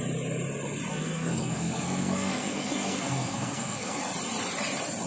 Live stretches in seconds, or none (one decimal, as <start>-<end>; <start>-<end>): 0.0-0.9; 4.0-5.1

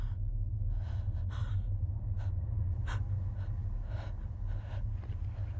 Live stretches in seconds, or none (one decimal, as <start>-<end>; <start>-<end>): 0.0-1.4; 3.2-5.6

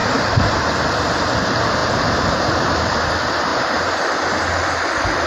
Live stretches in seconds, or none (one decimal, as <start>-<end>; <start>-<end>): 0.7-1.8; 3.1-3.5; 4.0-5.3

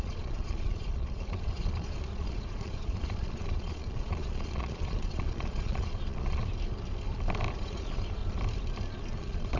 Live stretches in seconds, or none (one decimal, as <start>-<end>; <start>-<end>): 6.4-7.5; 8.2-9.2